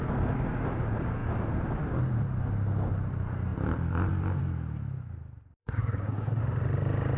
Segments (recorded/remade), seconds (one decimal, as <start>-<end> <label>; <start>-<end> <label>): 0.0-5.6 recorded; 5.6-6.4 remade; 6.4-7.2 recorded